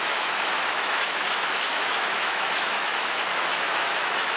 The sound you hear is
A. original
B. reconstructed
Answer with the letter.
B